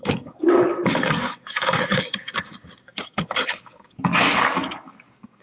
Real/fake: fake